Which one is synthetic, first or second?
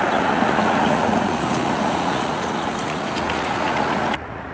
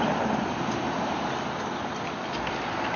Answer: first